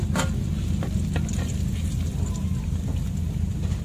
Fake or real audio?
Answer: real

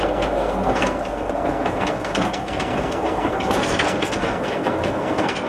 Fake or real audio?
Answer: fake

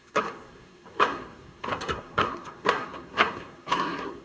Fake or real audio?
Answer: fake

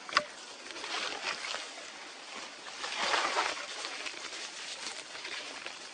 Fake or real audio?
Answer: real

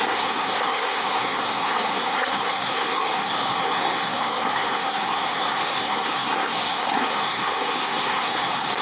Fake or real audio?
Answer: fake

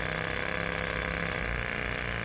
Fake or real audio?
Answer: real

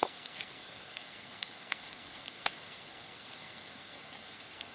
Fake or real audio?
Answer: fake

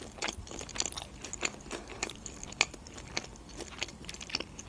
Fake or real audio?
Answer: real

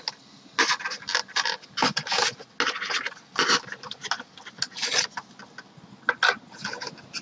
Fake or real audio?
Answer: real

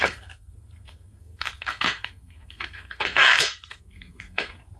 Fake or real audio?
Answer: fake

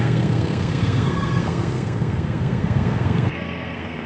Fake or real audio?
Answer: fake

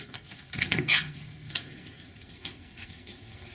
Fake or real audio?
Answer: fake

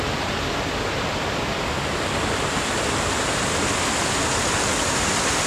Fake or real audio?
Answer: real